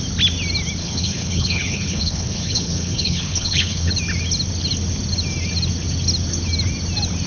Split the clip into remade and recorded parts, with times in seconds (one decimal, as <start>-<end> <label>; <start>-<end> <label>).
0.0-0.8 recorded; 0.8-3.9 remade; 3.9-7.3 recorded